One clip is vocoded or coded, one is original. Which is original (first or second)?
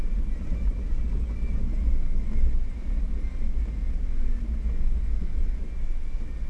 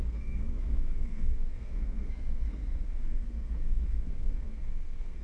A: first